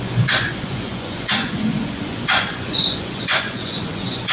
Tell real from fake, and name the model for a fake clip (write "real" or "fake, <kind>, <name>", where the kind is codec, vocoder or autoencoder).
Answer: fake, vocoder, Vocos